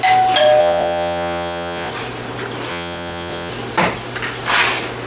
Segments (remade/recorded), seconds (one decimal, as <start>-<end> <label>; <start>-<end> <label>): 0.0-0.6 recorded; 0.6-1.9 remade; 1.9-2.7 recorded; 2.7-3.5 remade; 3.5-5.1 recorded